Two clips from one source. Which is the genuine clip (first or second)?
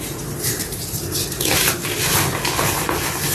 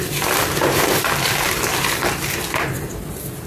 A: first